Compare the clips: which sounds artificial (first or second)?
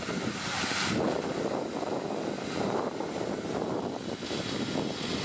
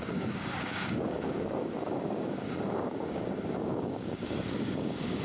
second